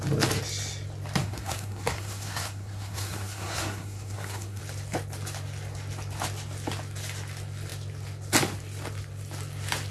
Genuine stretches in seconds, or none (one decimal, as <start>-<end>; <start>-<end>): 0.0-1.2; 4.6-9.9